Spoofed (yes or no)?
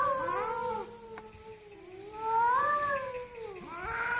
no